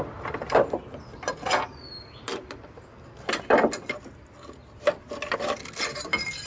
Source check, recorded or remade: recorded